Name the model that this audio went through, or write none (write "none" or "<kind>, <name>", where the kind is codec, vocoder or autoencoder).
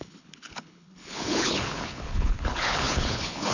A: codec, HILCodec